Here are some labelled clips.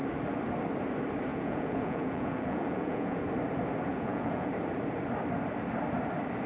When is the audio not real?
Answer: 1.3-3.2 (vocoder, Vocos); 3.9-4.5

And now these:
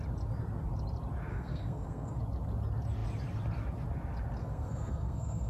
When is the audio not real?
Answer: 1.3-2.2 (codec, SNAC); 4.4-5.5

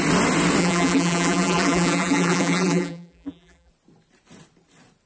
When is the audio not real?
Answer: 0.6-3.7 (vocoder, BigVGAN v2)

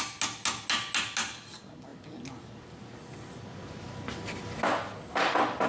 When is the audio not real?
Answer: none